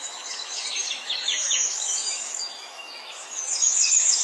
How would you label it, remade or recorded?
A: remade